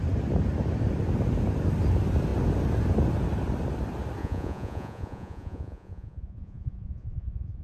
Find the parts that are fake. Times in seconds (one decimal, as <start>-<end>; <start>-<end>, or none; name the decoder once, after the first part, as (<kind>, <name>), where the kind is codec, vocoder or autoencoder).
4.2-7.6 (vocoder, Vocos)